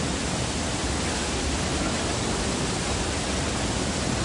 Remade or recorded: recorded